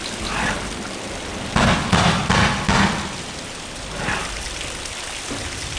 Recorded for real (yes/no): yes